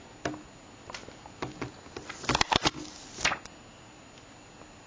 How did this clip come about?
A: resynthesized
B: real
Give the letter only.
B